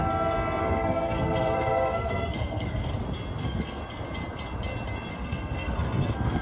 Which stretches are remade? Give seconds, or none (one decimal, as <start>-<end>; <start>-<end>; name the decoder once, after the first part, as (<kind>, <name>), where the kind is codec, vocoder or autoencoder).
0.6-2.9 (codec, SNAC); 3.4-3.8; 5.1-6.4